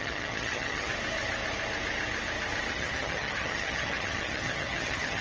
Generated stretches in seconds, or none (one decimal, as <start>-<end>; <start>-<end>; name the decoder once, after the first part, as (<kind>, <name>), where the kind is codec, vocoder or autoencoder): 0.0-0.9 (vocoder, HiFi-GAN); 2.7-5.2